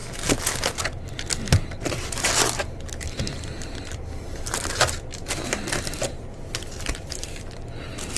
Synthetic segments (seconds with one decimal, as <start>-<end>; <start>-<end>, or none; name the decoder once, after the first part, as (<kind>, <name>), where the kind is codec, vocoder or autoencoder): none

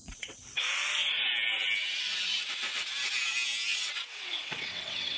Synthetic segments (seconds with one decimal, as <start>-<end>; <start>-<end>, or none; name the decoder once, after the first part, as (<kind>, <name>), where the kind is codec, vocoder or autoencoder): 0.0-0.6 (vocoder, WaveNeXt); 3.7-5.2

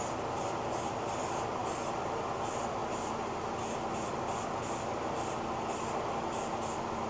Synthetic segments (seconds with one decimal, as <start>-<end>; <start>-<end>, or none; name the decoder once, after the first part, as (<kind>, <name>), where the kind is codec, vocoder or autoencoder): none